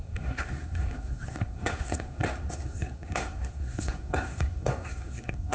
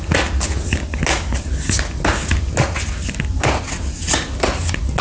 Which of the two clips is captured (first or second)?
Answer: second